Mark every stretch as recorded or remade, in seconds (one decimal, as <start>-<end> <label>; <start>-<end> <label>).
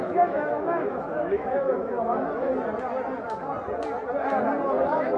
0.0-2.5 remade; 2.5-4.8 recorded; 4.8-5.2 remade